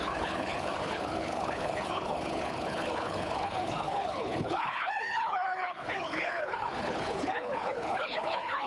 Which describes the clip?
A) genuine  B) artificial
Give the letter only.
B